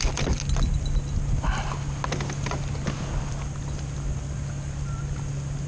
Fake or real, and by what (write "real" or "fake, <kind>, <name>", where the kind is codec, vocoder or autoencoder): real